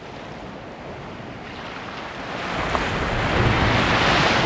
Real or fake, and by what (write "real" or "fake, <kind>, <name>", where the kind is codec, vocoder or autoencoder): real